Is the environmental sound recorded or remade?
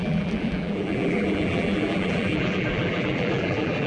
remade